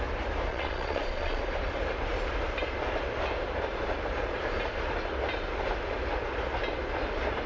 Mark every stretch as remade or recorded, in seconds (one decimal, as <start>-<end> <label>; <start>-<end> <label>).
0.0-0.5 recorded; 0.5-1.4 remade; 1.4-7.5 recorded